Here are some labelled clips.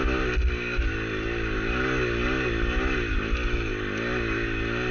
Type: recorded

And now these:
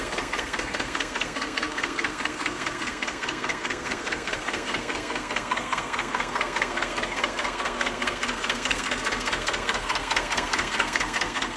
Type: remade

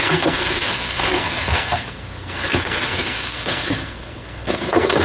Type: remade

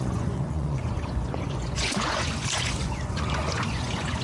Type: remade